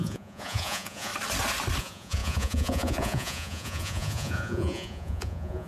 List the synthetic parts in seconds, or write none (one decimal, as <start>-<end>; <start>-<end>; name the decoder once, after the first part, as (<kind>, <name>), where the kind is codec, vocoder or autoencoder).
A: 0.0-1.1 (vocoder, Vocos); 1.8-5.7